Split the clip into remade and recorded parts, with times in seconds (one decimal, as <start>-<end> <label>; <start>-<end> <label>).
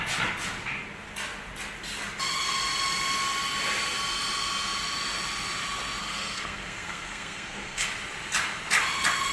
0.0-6.0 recorded; 6.0-7.9 remade; 7.9-9.3 recorded